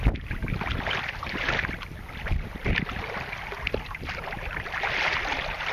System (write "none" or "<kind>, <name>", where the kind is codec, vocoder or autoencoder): none